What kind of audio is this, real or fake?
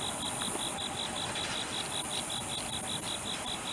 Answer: real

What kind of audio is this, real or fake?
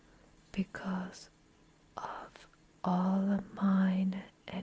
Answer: real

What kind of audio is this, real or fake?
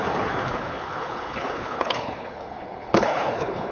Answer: fake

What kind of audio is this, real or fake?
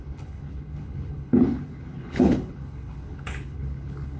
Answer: fake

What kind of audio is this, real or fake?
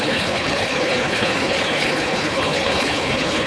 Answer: fake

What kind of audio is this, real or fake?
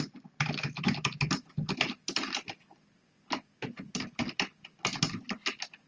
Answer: real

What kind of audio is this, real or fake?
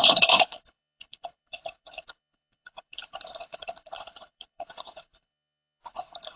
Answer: fake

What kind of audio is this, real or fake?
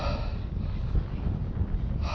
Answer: real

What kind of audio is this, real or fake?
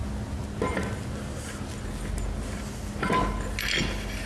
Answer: real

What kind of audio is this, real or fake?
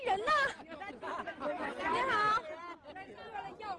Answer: real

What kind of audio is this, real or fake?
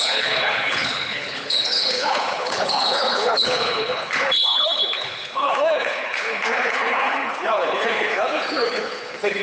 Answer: fake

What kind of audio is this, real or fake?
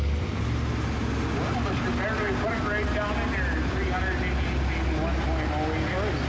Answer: real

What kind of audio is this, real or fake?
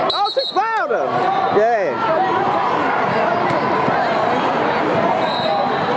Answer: real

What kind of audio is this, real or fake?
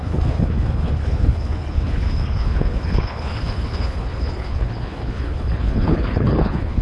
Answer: fake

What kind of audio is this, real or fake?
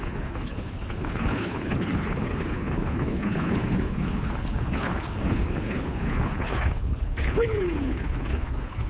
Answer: fake